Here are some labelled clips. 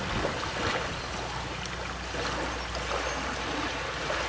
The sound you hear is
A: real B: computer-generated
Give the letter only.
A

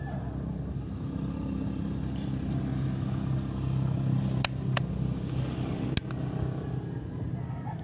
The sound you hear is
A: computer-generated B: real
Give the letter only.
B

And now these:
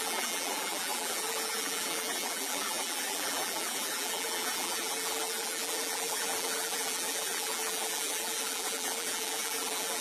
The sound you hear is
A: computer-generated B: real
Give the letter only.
A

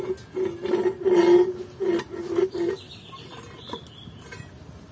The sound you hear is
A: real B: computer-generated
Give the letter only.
A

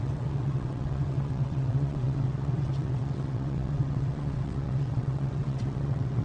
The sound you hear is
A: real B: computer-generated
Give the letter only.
B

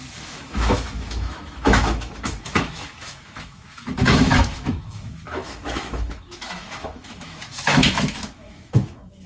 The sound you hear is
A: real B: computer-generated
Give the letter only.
B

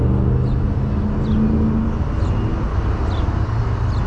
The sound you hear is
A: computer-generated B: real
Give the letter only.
B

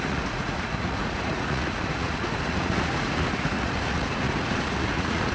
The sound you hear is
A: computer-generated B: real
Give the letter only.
A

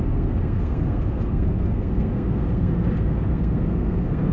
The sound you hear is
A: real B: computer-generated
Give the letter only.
B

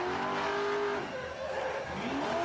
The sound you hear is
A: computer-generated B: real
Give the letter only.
B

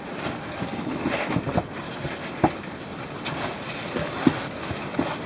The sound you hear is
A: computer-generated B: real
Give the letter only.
B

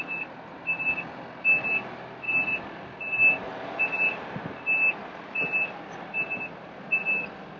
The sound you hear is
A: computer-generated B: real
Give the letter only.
B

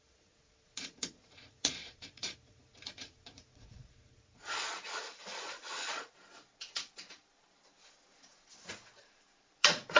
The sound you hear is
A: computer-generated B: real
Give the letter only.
A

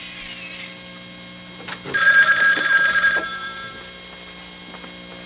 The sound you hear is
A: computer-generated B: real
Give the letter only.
B